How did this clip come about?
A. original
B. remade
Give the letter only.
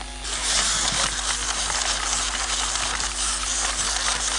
A